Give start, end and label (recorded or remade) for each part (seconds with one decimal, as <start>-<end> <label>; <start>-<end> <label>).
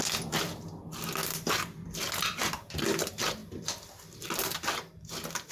0.0-5.5 recorded